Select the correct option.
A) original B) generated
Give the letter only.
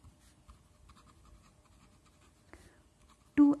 A